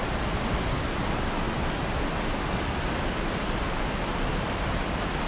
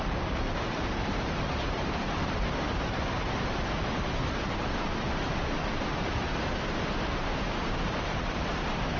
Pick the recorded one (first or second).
first